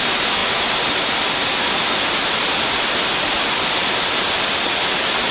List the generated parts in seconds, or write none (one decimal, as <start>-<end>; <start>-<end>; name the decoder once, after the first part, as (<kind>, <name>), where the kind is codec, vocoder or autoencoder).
none